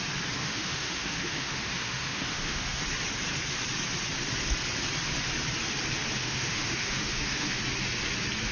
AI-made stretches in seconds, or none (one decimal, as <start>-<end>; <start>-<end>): 0.4-2.8; 6.2-7.6